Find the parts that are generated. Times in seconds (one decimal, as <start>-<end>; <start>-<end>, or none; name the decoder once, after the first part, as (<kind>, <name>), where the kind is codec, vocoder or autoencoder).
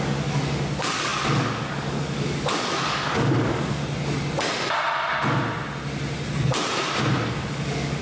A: 0.0-3.8 (codec, DAC); 7.3-8.0